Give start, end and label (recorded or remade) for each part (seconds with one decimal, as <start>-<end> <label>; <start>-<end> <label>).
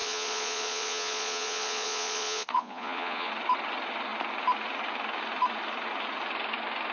0.0-3.3 remade; 3.3-6.9 recorded